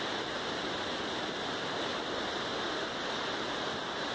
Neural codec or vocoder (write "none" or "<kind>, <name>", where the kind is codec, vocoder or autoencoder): none